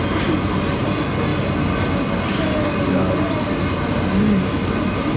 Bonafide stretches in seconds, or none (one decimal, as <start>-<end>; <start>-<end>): 0.0-5.2